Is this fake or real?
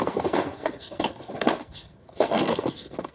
fake